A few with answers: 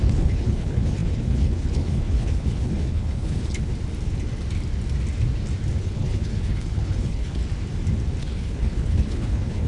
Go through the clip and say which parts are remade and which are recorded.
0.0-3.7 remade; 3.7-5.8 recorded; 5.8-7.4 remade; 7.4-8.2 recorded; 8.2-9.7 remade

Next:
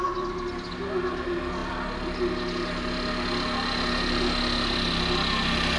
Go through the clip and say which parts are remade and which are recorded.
0.0-5.8 recorded

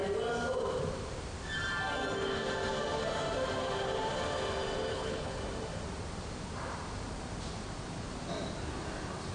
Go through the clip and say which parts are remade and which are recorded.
0.0-4.9 recorded; 4.9-5.4 remade; 5.4-9.3 recorded

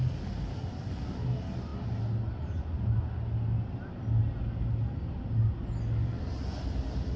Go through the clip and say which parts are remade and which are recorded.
0.0-7.2 recorded

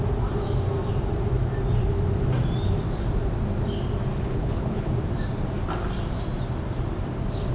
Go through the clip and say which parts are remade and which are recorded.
0.0-4.1 recorded; 4.1-4.9 remade; 4.9-7.5 recorded

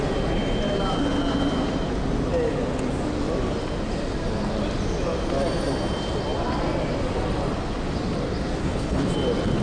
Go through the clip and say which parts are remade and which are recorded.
0.0-8.6 recorded; 8.6-9.1 remade; 9.1-9.6 recorded